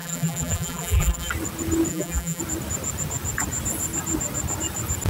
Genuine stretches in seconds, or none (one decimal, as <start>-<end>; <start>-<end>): 1.3-1.9; 2.4-5.1